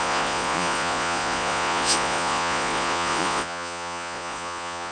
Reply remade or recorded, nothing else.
remade